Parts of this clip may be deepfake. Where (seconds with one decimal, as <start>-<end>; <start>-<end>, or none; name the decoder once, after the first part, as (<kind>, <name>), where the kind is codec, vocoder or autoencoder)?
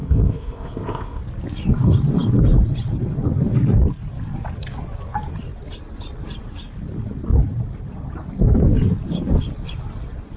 0.0-1.2 (codec, ZipCodec)